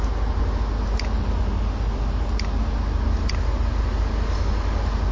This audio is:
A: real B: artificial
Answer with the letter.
A